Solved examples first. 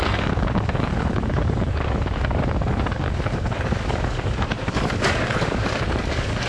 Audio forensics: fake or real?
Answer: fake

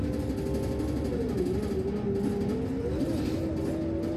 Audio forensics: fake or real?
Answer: real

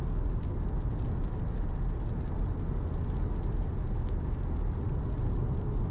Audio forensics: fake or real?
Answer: real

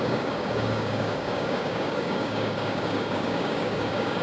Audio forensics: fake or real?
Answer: fake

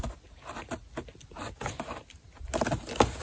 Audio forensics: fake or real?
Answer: real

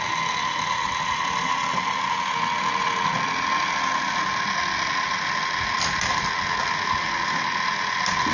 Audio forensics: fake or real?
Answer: real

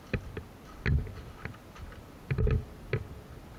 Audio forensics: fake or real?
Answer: real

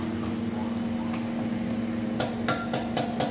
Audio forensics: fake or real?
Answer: real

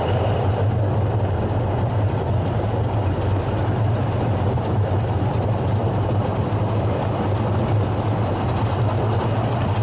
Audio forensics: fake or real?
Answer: fake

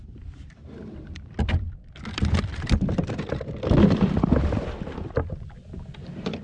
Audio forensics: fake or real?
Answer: fake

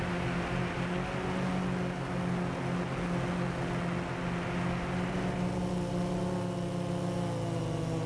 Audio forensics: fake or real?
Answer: real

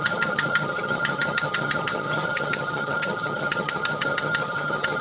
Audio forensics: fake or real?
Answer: fake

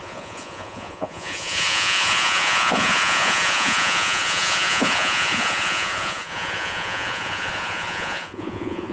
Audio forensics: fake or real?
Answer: fake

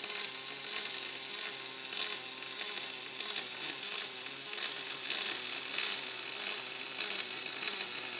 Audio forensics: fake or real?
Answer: real